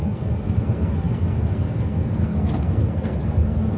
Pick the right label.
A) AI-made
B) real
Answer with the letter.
A